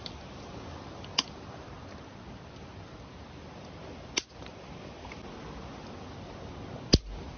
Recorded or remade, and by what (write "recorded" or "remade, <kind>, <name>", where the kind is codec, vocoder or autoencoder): recorded